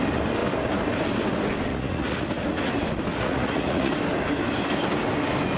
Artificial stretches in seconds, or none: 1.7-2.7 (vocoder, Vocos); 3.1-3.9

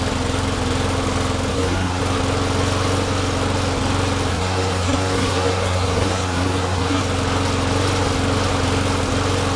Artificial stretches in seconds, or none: 1.5-2.0 (codec, SNAC); 4.3-7.0